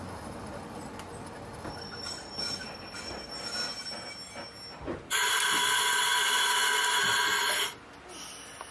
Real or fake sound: real